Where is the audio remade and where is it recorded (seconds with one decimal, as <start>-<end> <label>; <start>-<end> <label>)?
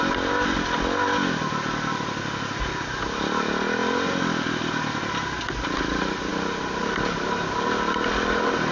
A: 0.0-8.7 recorded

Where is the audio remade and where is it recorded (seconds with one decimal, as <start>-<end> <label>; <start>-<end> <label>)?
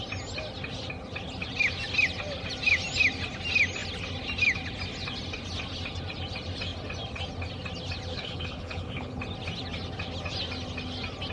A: 0.0-8.1 recorded; 8.1-9.2 remade; 9.2-11.3 recorded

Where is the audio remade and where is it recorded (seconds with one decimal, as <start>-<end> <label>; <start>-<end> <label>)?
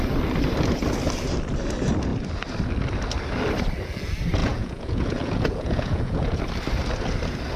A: 0.0-4.4 recorded; 4.4-6.4 remade; 6.4-7.6 recorded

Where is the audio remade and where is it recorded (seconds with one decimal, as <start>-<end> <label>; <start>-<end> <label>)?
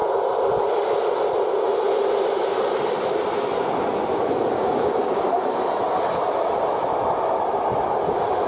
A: 0.0-3.5 recorded; 3.5-4.9 remade; 4.9-8.5 recorded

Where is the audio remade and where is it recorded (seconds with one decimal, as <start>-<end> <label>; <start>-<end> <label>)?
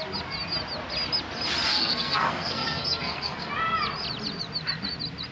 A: 0.0-1.7 recorded; 1.7-3.5 remade; 3.5-5.3 recorded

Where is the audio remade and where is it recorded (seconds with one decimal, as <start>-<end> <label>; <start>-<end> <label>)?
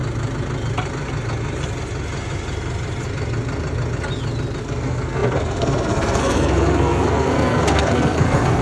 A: 0.0-4.6 recorded; 4.6-8.6 remade